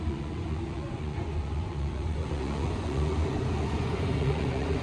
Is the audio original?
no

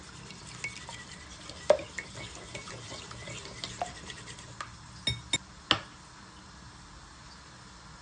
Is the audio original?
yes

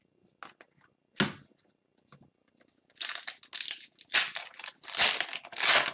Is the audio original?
yes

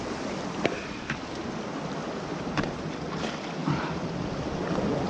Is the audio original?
no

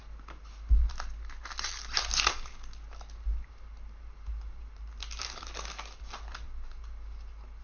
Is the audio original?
yes